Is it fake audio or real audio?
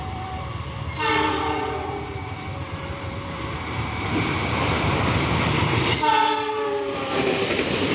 fake